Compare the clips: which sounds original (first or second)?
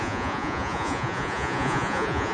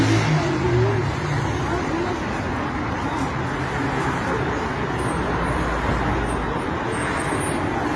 second